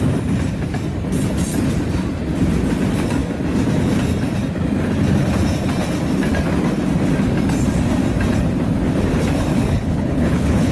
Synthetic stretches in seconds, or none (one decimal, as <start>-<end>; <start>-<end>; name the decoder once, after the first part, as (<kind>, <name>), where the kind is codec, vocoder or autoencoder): 9.5-10.7 (codec, HILCodec)